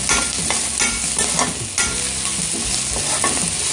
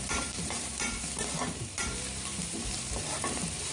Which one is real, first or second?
first